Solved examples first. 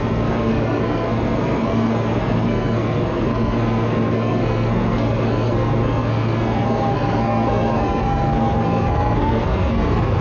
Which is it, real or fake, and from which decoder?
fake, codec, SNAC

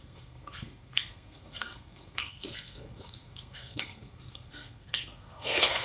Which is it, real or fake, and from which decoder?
fake, codec, SNAC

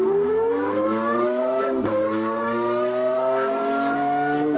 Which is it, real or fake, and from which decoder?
fake, codec, SNAC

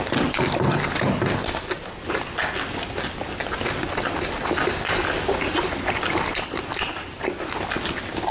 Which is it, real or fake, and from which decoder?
real